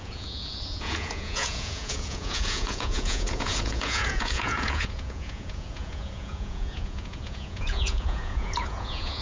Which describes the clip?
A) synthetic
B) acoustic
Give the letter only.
A